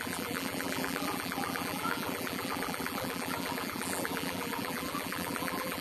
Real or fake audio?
fake